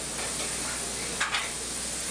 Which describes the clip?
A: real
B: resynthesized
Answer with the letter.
A